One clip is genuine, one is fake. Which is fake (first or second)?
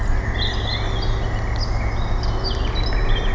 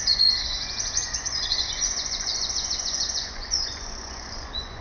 second